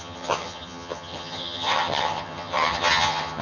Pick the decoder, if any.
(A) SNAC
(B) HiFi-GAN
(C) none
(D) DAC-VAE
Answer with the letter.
B